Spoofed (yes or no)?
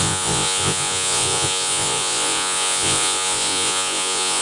yes